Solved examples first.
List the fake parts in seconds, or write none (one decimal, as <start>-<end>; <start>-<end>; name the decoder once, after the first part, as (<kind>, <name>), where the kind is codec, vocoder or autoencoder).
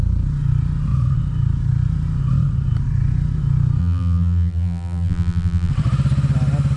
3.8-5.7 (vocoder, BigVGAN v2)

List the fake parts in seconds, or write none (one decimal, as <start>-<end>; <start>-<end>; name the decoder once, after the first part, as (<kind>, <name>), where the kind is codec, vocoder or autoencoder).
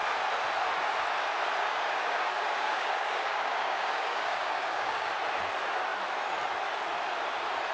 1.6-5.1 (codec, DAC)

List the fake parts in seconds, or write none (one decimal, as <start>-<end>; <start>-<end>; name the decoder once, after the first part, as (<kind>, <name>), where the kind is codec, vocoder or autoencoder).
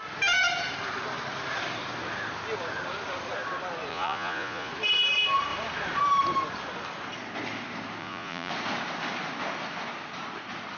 3.9-4.7 (vocoder, Vocos); 8.0-8.5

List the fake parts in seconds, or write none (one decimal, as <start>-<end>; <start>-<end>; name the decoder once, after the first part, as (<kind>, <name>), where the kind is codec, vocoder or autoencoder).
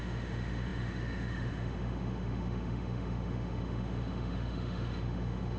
0.0-5.6 (autoencoder, DAC-VAE)